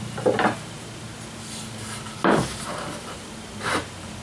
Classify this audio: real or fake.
real